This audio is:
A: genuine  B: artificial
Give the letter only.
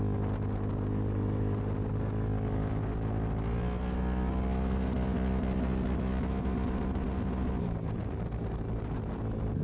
A